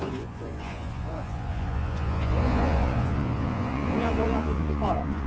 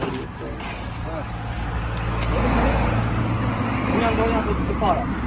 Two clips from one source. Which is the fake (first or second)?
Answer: first